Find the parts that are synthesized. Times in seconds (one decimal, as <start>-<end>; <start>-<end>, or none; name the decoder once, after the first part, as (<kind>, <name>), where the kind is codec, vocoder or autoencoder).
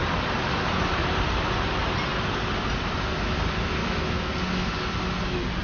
3.8-4.3 (autoencoder, DAC-VAE)